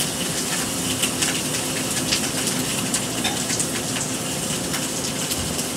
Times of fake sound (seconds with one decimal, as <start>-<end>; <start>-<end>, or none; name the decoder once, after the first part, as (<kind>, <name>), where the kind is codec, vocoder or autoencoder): 2.7-3.7 (vocoder, BigVGAN v2)